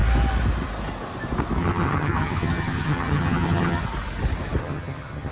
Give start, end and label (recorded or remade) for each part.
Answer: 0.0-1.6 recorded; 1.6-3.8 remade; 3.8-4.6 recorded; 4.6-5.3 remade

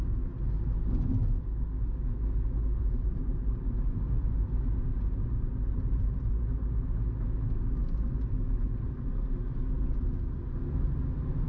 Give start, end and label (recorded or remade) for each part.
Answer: 0.0-2.8 recorded; 2.8-6.2 remade; 6.2-11.5 recorded

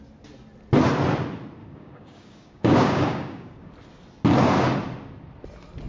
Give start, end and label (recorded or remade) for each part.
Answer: 0.0-1.6 recorded; 1.6-3.7 remade; 3.7-5.9 recorded

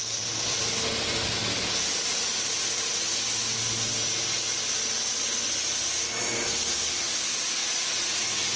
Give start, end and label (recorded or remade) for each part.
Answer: 0.0-7.6 recorded; 7.6-8.6 remade

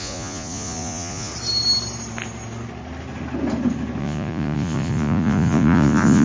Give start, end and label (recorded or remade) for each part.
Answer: 0.0-1.3 remade; 1.3-4.0 recorded; 4.0-6.2 remade